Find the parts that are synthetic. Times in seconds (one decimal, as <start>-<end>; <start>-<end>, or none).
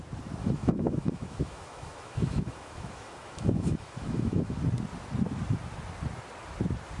0.4-4.6